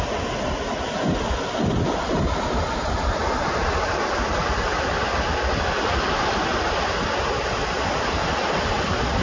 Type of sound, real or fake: real